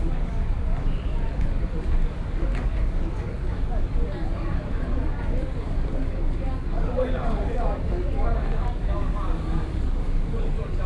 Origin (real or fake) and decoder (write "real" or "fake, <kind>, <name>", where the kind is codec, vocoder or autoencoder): fake, codec, DAC